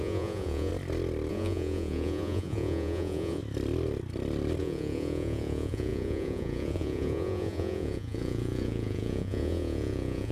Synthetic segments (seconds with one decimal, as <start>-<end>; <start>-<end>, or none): 0.0-0.7; 1.3-3.4; 4.6-10.3